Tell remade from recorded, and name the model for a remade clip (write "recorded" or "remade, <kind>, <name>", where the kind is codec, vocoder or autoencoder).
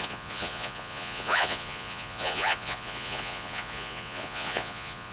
remade, vocoder, Vocos